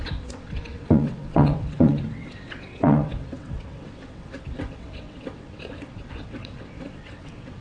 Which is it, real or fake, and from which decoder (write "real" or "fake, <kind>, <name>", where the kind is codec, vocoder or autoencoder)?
fake, vocoder, WaveNeXt